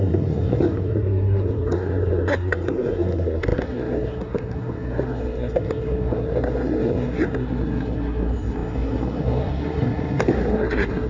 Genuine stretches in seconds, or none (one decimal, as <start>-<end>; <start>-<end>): none